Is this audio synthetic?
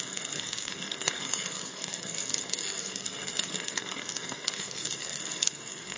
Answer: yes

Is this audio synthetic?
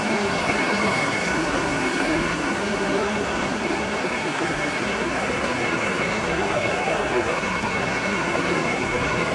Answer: yes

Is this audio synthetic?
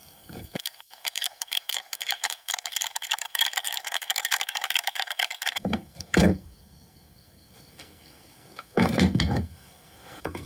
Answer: yes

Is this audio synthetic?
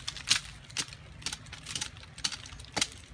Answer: no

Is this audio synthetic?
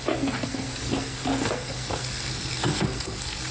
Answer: yes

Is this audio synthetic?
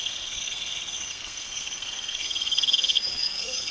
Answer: yes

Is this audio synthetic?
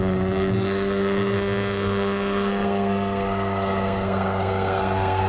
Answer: yes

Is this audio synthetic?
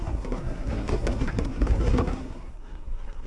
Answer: yes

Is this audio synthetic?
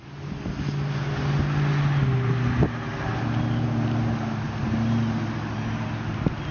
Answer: no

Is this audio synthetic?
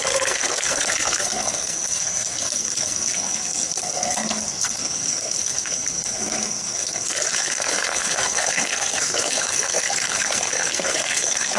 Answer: yes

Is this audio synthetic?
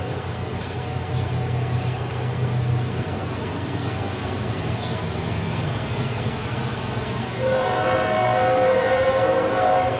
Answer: yes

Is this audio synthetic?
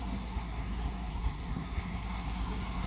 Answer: yes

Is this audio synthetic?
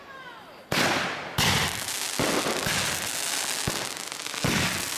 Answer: no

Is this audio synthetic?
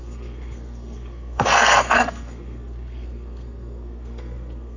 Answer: yes